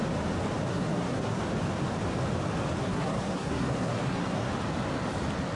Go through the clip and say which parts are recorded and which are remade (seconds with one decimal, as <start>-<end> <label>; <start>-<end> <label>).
0.0-0.7 recorded; 0.7-1.4 remade; 1.4-2.8 recorded; 2.8-4.5 remade; 4.5-5.6 recorded